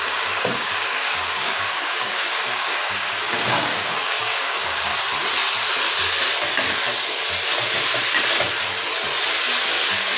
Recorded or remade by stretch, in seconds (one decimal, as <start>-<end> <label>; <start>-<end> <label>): 0.0-4.9 remade; 4.9-10.2 recorded